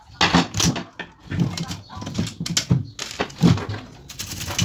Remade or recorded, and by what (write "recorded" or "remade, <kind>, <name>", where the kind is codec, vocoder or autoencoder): recorded